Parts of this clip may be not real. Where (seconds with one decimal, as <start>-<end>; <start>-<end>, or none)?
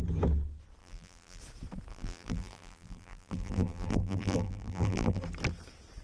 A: 0.8-1.4; 1.9-5.2